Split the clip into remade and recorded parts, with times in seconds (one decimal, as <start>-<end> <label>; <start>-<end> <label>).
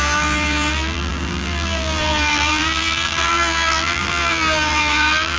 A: 0.0-5.4 remade